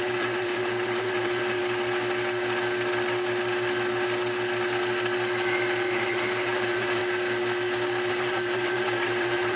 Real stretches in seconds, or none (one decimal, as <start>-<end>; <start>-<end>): 1.6-6.0; 7.0-8.1